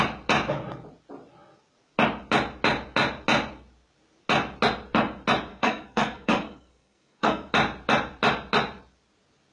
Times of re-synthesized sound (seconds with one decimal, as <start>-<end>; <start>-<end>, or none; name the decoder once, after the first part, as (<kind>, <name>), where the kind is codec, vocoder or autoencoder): 5.5-7.5 (codec, SNAC)